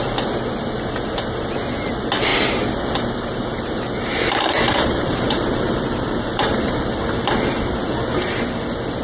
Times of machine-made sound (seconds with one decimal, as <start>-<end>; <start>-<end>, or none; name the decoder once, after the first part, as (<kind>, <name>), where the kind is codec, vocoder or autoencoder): 2.3-7.1 (vocoder, BigVGAN v2)